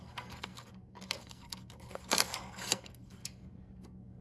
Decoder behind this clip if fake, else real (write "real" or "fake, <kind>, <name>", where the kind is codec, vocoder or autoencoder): fake, codec, SNAC